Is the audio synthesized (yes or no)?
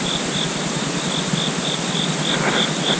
no